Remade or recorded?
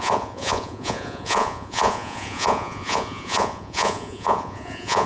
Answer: remade